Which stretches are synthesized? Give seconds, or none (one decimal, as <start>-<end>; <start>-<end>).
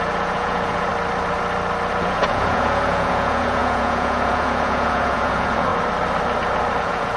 0.0-0.9; 1.9-5.7; 6.8-7.2